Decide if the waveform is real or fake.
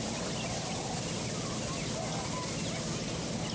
real